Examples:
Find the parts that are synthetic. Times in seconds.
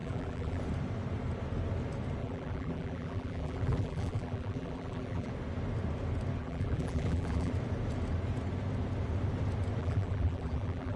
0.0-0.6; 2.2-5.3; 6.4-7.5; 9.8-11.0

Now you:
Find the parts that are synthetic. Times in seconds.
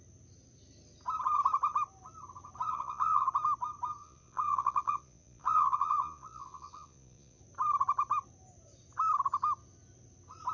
2.7-3.3; 4.0-7.4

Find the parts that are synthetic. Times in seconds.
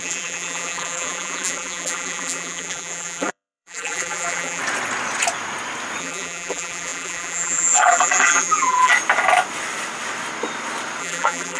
0.0-4.6; 6.0-8.9; 11.0-11.6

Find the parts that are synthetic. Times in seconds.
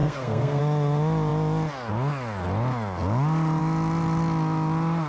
0.0-0.6